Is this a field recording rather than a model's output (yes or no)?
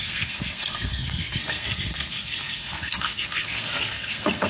no